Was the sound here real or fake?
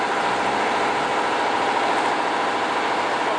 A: real